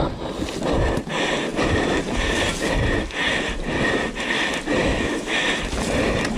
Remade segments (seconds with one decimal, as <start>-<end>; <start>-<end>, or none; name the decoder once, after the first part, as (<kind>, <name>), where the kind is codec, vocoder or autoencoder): 4.8-5.6 (autoencoder, DAC-VAE)